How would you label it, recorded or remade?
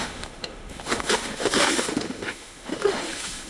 remade